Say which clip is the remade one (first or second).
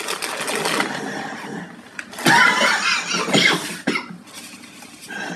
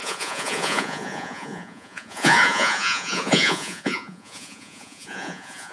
second